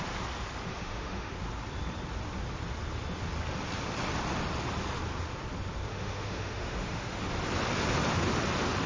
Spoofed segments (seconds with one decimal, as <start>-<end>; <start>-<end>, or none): 0.7-1.3; 5.9-7.3